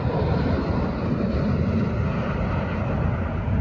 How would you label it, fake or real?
real